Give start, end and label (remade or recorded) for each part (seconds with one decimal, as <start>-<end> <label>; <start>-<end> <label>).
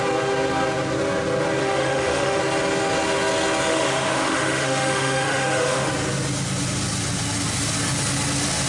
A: 0.0-1.6 recorded; 1.6-2.4 remade; 2.4-3.7 recorded; 3.7-5.9 remade; 5.9-8.7 recorded